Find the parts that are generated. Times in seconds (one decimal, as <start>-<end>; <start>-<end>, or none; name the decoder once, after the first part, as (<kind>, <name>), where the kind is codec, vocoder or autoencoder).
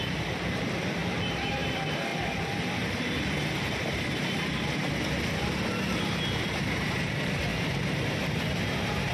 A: 0.0-2.1 (vocoder, BigVGAN v2); 5.8-9.1